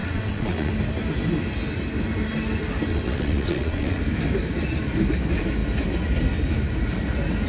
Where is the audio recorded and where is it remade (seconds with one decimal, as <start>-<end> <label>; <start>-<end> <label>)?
0.0-0.7 remade; 0.7-2.9 recorded; 2.9-4.0 remade; 4.0-7.5 recorded